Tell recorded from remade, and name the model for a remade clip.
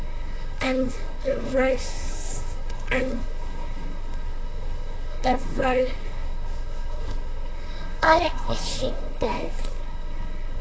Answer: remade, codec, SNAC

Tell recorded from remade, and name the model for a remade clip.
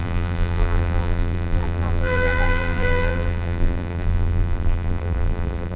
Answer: remade, vocoder, BigVGAN v2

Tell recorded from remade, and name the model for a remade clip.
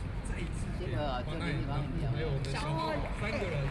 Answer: recorded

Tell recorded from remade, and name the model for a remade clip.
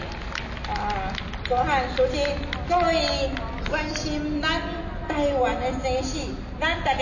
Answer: recorded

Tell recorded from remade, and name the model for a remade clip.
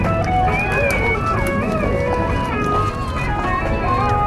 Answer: recorded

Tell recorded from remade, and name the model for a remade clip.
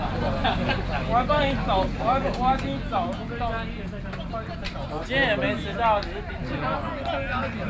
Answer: recorded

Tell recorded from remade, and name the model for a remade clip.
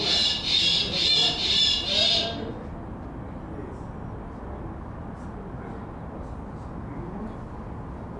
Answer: recorded